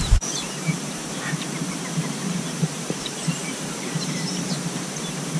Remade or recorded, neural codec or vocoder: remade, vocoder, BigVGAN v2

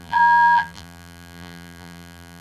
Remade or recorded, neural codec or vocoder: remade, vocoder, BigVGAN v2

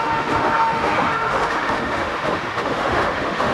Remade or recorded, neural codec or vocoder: remade, autoencoder, DAC-VAE